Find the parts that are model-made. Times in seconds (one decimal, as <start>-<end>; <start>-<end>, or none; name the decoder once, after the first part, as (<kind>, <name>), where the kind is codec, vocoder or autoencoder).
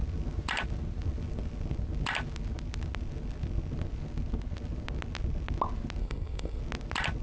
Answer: 6.0-6.6 (codec, SNAC)